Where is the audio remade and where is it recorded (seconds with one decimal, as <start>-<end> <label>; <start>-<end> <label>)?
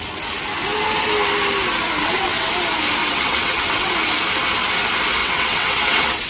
0.0-2.0 recorded; 2.0-2.5 remade; 2.5-3.0 recorded; 3.0-3.9 remade; 3.9-5.2 recorded; 5.2-6.3 remade